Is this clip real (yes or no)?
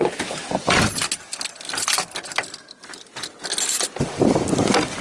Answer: yes